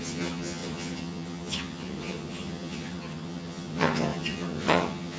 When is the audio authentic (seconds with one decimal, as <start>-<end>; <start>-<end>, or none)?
none